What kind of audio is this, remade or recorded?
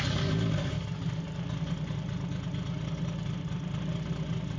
recorded